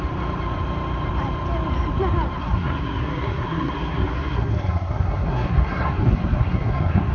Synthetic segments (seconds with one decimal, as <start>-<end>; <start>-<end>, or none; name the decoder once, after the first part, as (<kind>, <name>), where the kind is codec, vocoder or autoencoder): 2.4-7.1 (codec, SNAC)